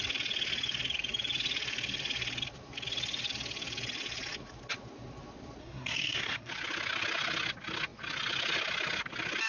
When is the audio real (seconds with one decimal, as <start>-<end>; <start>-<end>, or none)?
0.0-5.6; 6.5-9.5